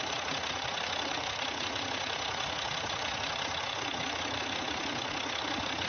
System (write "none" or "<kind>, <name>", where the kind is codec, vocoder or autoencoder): vocoder, Vocos